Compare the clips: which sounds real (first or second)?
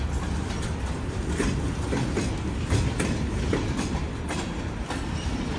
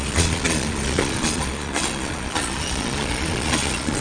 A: first